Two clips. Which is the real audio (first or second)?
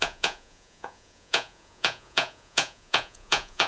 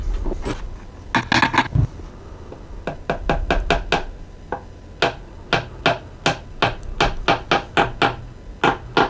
second